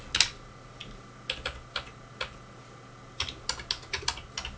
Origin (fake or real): real